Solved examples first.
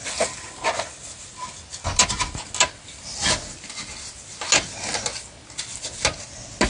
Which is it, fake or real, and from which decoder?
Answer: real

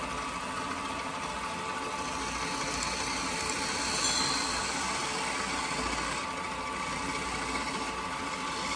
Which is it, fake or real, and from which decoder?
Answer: real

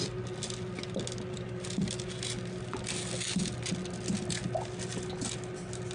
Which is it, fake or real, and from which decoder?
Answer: real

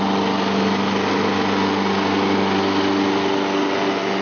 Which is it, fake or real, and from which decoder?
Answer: real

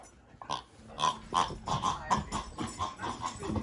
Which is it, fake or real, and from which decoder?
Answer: real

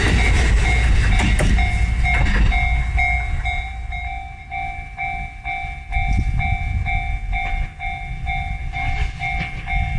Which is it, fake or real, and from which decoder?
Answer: real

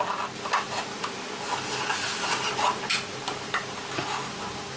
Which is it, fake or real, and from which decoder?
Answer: real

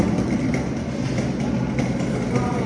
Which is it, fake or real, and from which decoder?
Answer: real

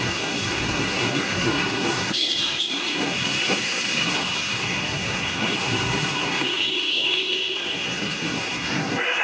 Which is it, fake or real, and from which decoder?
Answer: fake, codec, SNAC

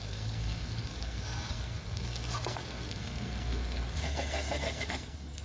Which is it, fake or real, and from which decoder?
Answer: fake, codec, SNAC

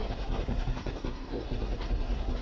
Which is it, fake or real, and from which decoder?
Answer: fake, codec, SNAC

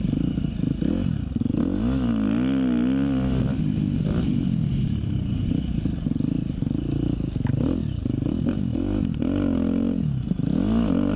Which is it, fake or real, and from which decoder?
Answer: real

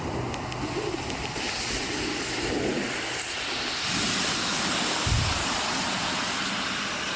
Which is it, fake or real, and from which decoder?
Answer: real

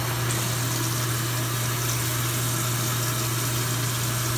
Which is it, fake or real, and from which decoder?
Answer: real